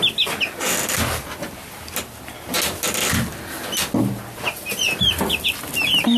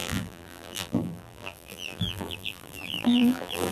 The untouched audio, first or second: first